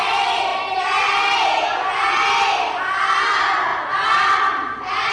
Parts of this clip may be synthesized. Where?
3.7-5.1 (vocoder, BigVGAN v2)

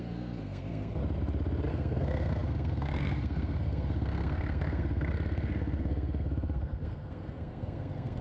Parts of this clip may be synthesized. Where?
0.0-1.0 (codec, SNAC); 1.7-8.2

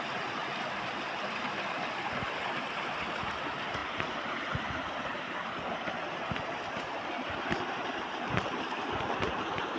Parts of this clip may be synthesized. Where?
0.0-0.4 (vocoder, BigVGAN v2); 2.0-9.8

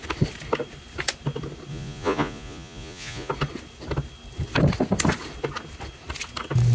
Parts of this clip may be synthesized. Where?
1.7-3.3 (vocoder, Vocos)

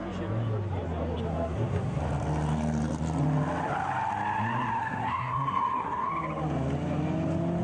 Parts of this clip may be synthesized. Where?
1.3-2.0 (codec, SNAC); 4.8-6.1

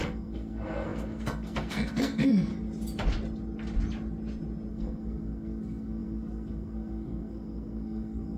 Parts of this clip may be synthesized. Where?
0.0-2.5 (codec, SNAC); 4.7-8.4

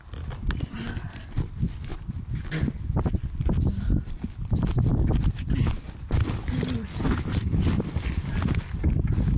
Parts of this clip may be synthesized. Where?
none